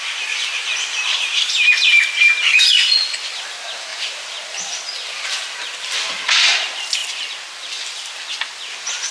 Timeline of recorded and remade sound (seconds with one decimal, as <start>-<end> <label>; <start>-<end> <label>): 0.0-9.1 recorded

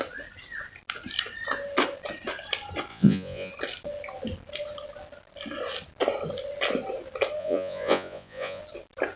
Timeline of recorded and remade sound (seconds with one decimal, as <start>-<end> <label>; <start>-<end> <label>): 0.0-2.9 recorded; 2.9-3.5 remade; 3.5-7.4 recorded; 7.4-8.6 remade; 8.6-9.2 recorded

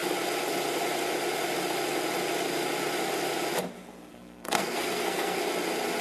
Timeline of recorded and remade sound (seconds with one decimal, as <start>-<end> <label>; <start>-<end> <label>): 0.0-4.1 recorded; 4.1-5.4 remade; 5.4-6.0 recorded

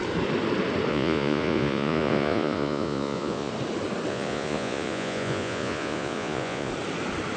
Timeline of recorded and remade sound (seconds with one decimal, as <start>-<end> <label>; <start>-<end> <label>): 0.0-0.9 recorded; 0.9-3.5 remade; 3.5-4.1 recorded; 4.1-6.7 remade; 6.7-7.4 recorded

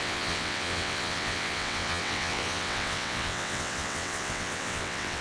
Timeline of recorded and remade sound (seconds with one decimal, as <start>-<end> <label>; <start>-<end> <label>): 0.0-5.2 remade

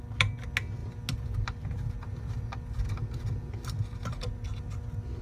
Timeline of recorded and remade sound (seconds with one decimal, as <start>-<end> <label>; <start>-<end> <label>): 0.0-5.2 recorded

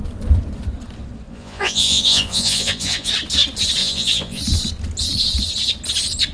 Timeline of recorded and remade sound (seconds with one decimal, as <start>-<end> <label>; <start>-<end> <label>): 0.0-1.3 recorded; 1.3-3.1 remade; 3.1-3.8 recorded; 3.8-4.4 remade; 4.4-6.3 recorded

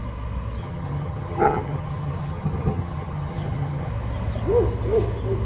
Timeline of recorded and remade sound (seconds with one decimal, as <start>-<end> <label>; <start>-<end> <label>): 0.0-0.6 recorded; 0.6-3.9 remade; 3.9-5.5 recorded